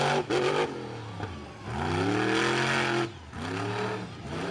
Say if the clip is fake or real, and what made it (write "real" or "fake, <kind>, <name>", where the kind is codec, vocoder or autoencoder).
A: real